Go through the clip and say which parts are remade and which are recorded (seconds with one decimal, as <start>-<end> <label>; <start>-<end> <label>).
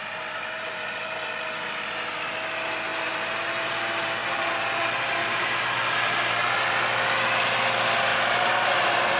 0.0-2.9 recorded; 2.9-3.7 remade; 3.7-4.2 recorded; 4.2-4.8 remade; 4.8-5.2 recorded; 5.2-6.7 remade; 6.7-8.1 recorded; 8.1-9.2 remade